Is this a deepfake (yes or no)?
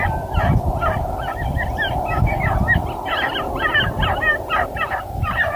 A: no